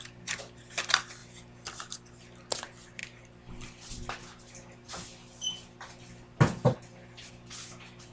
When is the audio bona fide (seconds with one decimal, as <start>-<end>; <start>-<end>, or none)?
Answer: 0.0-8.1